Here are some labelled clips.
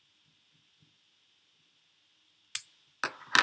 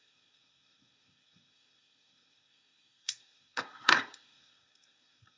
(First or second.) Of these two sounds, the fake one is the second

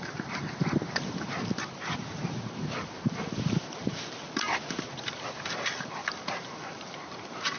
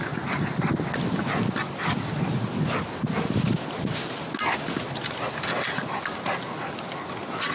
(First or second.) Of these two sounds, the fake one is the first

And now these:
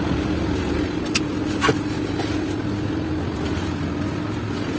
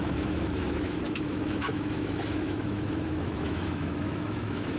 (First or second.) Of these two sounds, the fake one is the second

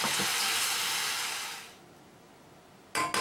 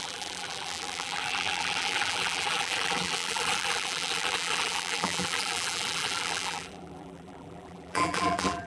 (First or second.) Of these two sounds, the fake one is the second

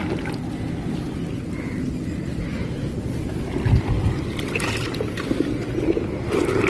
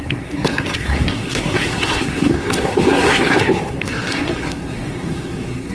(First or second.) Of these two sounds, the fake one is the second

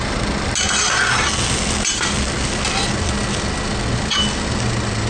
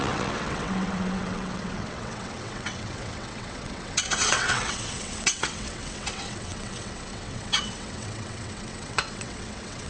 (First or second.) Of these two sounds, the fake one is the second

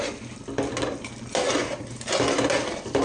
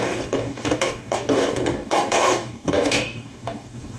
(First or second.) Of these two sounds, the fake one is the second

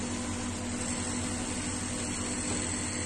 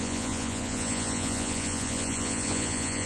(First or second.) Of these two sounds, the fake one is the second